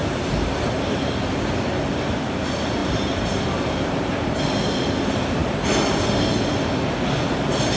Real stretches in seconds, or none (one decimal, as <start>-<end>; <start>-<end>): 1.2-2.8; 4.4-7.8